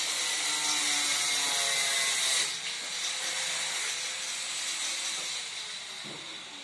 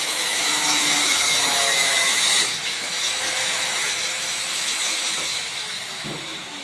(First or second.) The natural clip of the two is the first